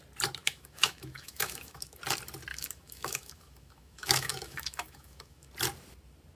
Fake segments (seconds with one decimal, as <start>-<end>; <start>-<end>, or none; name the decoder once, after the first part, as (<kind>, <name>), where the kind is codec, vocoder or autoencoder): 0.4-2.0 (autoencoder, DAC-VAE); 2.5-5.5